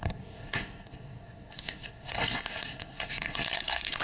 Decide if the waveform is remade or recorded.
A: remade